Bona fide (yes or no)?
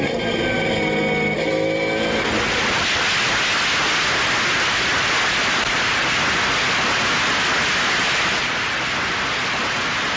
yes